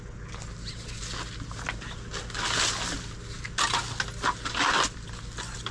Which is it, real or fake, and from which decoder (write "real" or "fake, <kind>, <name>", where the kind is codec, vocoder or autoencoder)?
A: real